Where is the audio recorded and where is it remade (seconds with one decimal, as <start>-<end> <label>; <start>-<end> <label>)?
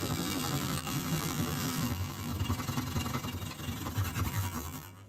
0.0-2.3 remade; 2.3-4.3 recorded; 4.3-5.1 remade